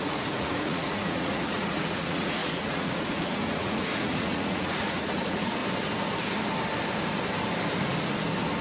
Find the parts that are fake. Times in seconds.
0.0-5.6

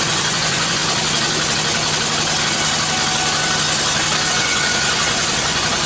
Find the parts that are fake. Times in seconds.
0.0-0.8; 4.3-5.9

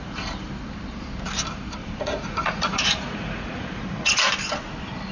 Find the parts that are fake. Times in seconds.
1.8-4.1

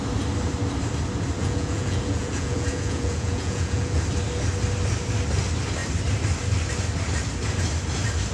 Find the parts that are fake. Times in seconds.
1.4-4.0

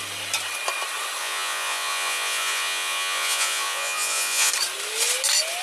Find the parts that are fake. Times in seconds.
1.2-4.5